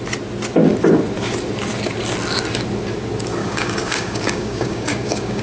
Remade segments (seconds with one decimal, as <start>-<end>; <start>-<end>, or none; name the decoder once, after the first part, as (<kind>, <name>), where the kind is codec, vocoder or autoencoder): 3.4-5.4 (codec, DAC)

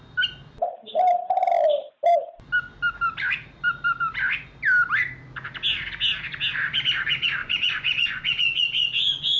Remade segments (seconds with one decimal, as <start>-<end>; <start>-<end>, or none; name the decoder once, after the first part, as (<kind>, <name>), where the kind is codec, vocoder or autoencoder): 7.4-9.4 (vocoder, Vocos)

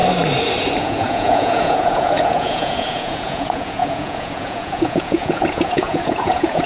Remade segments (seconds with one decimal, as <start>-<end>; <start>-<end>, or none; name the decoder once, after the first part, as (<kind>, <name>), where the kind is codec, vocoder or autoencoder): 0.8-6.7 (vocoder, Vocos)

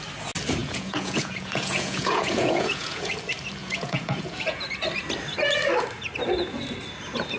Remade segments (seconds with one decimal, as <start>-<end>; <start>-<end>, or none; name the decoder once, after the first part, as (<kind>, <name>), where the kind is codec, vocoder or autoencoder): 0.6-3.1 (vocoder, Vocos); 3.6-4.6

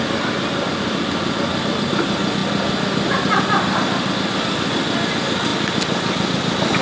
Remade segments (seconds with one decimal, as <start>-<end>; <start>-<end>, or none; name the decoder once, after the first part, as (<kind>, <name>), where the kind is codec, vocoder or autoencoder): none

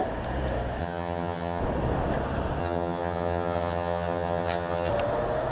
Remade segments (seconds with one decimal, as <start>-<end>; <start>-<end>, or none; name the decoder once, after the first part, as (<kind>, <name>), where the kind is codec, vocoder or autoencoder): 0.8-1.6 (vocoder, HiFi-GAN); 2.6-4.9